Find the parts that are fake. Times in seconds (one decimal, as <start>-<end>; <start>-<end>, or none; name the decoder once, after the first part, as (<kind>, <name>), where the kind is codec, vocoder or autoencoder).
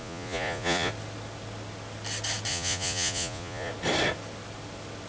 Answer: 0.0-0.9 (vocoder, Vocos); 2.5-3.7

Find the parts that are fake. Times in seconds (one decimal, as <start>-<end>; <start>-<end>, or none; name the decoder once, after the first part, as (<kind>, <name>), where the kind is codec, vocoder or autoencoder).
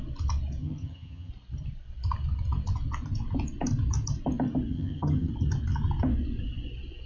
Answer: 0.6-1.3 (vocoder, HiFi-GAN); 4.7-5.3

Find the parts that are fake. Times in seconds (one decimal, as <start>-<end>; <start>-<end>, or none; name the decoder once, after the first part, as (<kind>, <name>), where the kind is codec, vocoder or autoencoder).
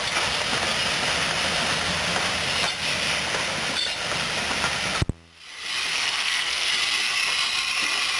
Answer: 5.9-6.7 (codec, SNAC)